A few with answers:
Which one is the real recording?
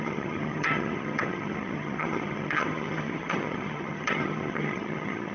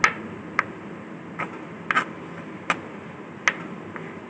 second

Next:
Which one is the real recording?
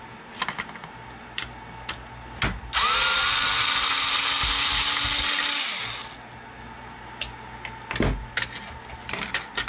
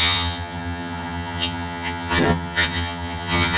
first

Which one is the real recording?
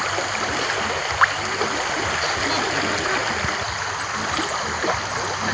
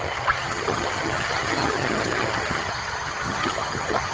first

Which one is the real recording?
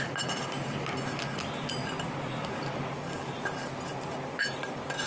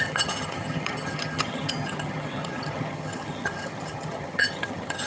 first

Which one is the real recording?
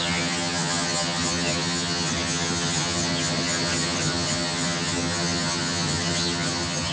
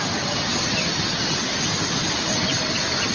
second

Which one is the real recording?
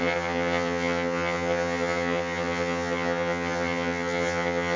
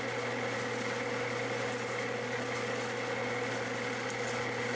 second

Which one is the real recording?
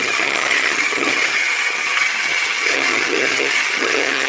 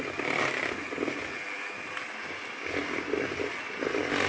second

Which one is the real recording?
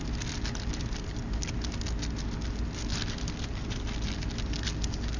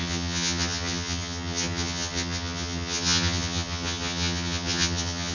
first